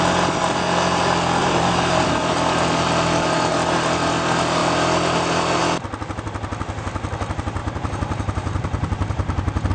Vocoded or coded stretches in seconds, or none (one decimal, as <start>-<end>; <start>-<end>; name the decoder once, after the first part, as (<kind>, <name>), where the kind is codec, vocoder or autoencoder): 1.4-2.1 (vocoder, BigVGAN v2); 7.6-9.7